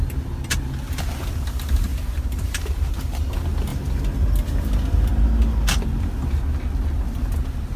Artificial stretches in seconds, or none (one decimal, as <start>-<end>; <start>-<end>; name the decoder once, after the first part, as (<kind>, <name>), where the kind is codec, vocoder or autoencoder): 1.9-3.2 (vocoder, BigVGAN v2)